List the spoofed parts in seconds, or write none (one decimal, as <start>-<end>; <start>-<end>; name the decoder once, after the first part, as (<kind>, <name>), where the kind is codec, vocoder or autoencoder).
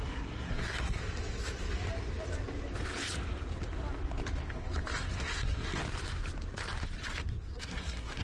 0.0-1.0 (codec, SNAC); 5.0-5.8; 7.6-8.2